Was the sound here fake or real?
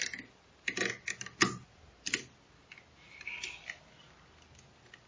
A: real